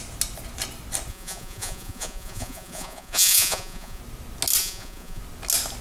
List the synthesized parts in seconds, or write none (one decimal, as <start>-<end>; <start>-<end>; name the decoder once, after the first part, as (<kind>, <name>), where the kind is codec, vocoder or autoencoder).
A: 1.1-4.0 (vocoder, Vocos); 4.6-5.2